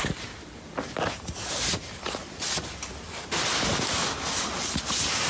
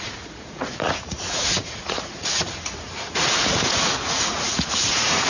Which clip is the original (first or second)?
first